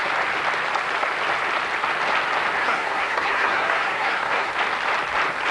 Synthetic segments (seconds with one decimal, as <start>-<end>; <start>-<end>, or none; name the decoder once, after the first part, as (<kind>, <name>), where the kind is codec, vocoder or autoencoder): 2.6-4.5 (codec, SNAC)